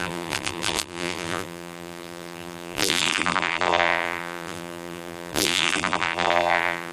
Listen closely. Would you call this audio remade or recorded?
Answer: remade